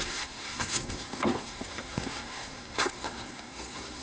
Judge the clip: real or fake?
fake